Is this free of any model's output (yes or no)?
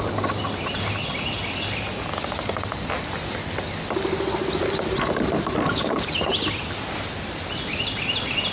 yes